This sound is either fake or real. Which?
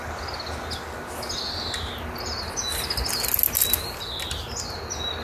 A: real